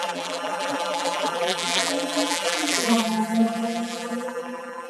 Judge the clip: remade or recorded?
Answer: remade